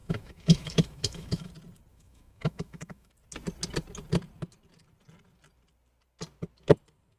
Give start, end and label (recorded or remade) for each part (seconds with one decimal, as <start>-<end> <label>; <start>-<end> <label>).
0.0-1.5 remade; 1.5-1.9 recorded; 1.9-3.1 remade; 3.1-7.2 recorded